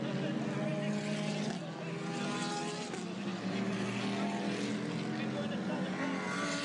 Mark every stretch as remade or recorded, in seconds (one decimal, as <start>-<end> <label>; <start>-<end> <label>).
0.0-6.6 recorded